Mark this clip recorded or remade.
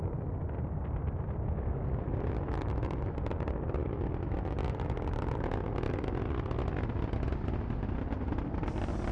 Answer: recorded